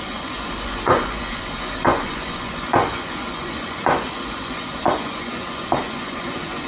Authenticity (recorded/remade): remade